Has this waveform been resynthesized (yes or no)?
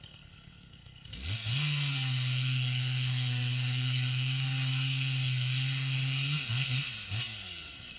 yes